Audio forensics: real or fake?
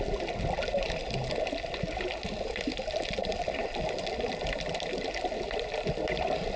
real